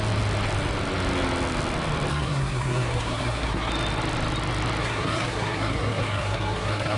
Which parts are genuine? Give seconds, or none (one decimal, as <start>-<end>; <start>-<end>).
0.0-2.1; 3.7-4.8